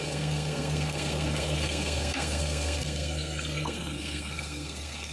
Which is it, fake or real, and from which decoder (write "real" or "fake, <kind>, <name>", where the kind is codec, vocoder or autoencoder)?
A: fake, codec, SNAC